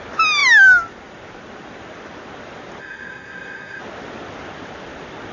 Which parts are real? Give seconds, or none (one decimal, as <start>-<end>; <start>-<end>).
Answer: 0.0-2.8; 3.8-5.3